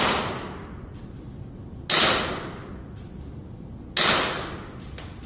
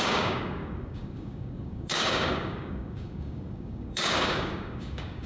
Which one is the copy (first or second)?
second